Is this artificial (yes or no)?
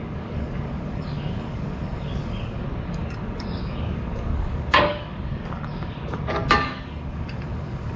yes